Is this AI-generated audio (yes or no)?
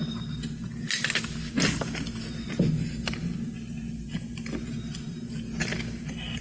no